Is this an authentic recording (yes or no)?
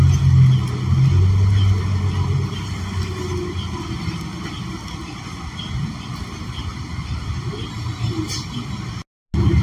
yes